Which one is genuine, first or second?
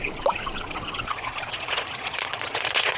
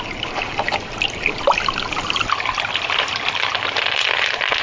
second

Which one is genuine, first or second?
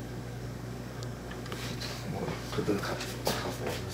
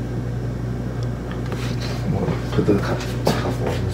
second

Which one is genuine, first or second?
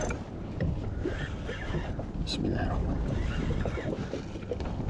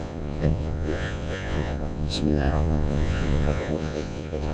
first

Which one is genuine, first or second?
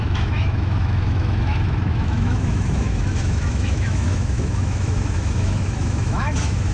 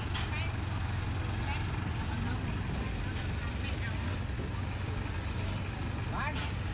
second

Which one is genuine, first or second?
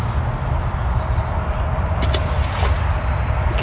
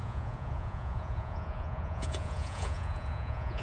first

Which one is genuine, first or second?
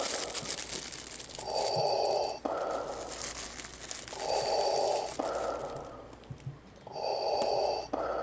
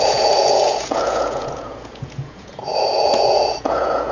first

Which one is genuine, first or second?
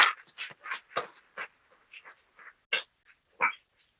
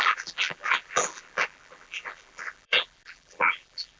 first